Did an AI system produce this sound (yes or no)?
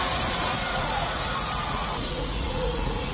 yes